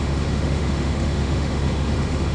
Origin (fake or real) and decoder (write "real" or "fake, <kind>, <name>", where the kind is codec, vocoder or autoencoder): fake, autoencoder, DAC-VAE